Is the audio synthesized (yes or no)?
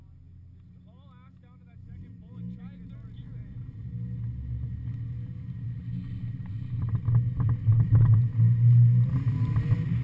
no